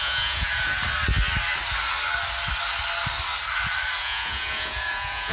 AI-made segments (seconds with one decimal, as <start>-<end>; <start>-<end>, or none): 0.0-0.8; 4.0-5.3